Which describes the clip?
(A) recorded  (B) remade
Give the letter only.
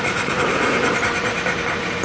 A